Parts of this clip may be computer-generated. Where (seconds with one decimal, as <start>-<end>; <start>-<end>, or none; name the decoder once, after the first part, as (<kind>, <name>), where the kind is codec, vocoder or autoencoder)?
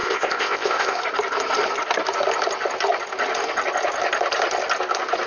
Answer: 0.0-1.0 (codec, ZipCodec)